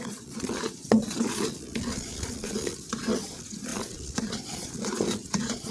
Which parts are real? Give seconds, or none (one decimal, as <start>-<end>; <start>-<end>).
none